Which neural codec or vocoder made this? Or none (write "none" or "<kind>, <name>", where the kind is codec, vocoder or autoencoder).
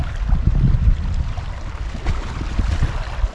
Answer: none